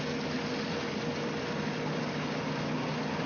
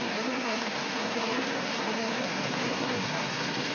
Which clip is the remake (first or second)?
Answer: second